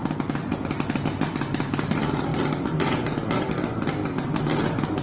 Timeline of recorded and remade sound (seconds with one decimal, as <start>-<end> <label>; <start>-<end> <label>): 0.0-5.0 recorded